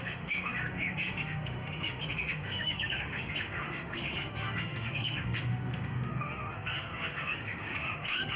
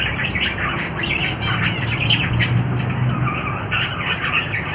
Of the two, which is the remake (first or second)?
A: first